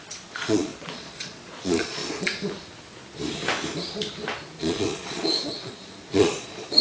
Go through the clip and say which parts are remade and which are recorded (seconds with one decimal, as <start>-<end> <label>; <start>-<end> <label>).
0.0-2.0 remade; 2.0-4.6 recorded; 4.6-6.8 remade